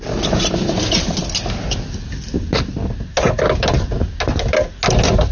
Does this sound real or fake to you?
real